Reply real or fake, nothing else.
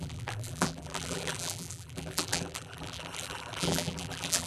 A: fake